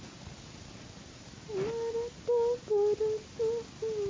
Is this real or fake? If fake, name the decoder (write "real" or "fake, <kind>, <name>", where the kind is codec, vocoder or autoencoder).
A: real